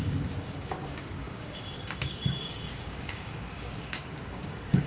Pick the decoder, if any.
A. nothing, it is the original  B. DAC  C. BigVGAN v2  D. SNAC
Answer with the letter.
B